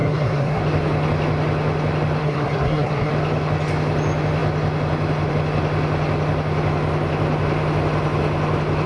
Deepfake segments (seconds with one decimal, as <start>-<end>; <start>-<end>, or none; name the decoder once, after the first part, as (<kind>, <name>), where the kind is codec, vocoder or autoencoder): 0.0-0.6 (codec, SNAC); 2.2-3.1